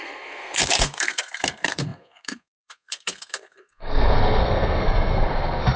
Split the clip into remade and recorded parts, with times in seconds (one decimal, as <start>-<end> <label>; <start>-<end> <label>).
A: 0.0-5.8 remade